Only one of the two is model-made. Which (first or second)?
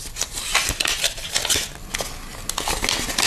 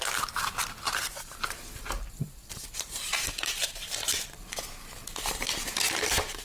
second